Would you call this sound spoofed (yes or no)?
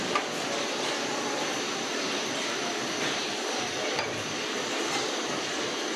no